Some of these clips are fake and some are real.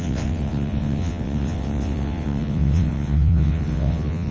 fake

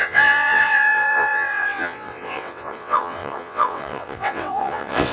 fake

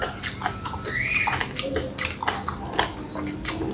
real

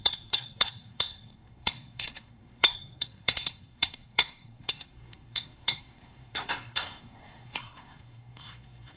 fake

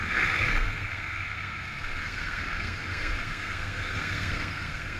fake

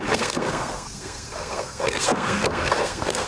fake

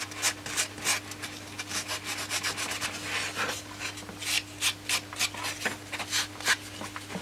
real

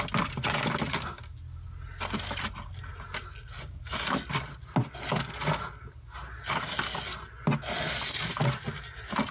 real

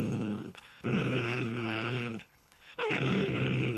fake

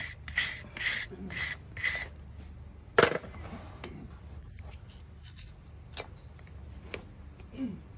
real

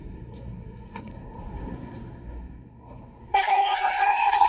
fake